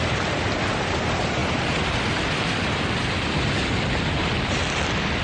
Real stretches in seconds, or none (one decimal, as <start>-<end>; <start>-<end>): 0.0-5.2